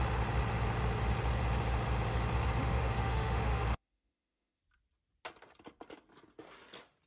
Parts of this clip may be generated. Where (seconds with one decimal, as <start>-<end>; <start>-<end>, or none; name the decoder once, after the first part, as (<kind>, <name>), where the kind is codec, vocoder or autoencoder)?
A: 2.6-4.6 (autoencoder, DAC-VAE)